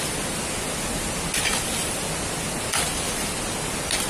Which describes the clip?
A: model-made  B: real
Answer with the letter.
B